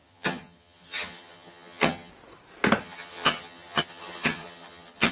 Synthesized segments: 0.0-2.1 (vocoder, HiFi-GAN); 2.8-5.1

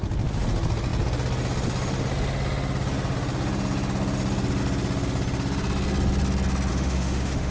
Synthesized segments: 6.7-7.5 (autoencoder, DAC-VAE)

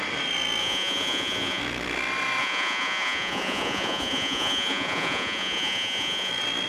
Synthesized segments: 0.6-1.6 (vocoder, Vocos); 2.4-6.3

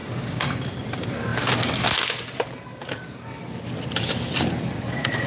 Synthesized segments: 0.0-0.6 (codec, DAC)

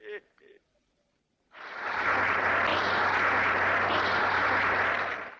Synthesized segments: none

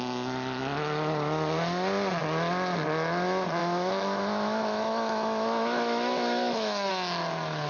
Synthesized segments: 3.6-6.9 (autoencoder, DAC-VAE)

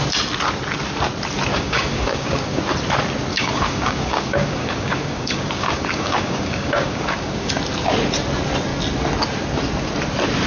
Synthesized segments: 1.5-2.6 (codec, DAC); 3.3-7.5

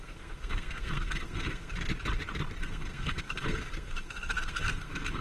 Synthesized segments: 0.0-1.7 (codec, SNAC); 2.6-5.2